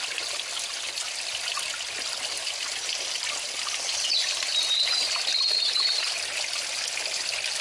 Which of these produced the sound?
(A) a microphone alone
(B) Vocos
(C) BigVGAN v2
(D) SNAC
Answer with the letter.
A